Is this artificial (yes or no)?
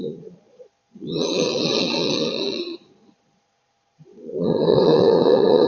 yes